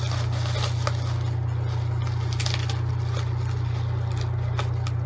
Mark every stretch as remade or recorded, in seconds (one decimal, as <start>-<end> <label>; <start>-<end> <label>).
0.0-5.1 recorded